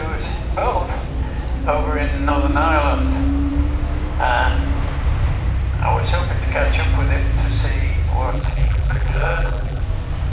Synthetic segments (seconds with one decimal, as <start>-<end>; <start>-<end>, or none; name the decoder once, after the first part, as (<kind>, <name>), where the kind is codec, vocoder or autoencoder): 8.3-9.8 (vocoder, BigVGAN v2)

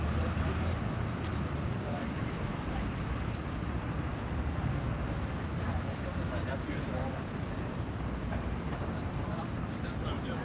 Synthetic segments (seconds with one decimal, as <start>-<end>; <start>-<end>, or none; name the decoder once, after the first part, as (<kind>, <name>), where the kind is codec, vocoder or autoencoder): 0.0-5.9 (vocoder, BigVGAN v2); 6.5-10.4

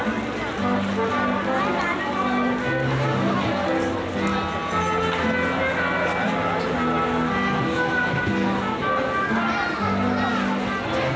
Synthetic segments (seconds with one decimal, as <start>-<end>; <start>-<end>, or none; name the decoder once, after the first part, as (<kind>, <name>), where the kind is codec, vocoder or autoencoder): none

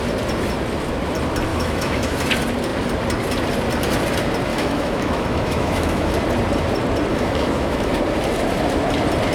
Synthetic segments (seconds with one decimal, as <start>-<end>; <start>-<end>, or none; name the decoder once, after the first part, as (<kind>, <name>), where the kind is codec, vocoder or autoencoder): 1.5-2.2 (autoencoder, DAC-VAE); 4.5-6.1; 7.1-7.9

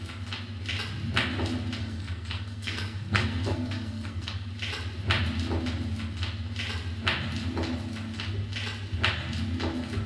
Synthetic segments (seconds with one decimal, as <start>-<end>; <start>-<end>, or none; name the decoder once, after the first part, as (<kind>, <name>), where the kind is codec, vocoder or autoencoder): 1.8-4.5 (codec, SNAC)

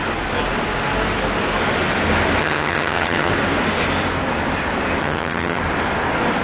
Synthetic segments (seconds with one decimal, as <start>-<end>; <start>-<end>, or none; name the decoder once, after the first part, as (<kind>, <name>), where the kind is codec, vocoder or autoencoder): 2.4-3.3 (vocoder, HiFi-GAN); 5.0-5.6